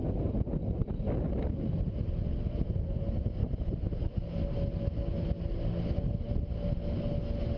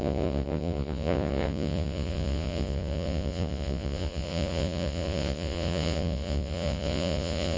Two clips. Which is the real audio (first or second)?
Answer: first